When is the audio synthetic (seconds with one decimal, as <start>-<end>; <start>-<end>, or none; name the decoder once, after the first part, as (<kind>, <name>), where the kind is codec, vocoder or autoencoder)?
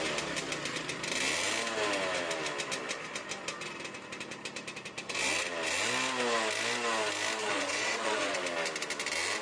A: 7.4-8.4 (vocoder, Vocos)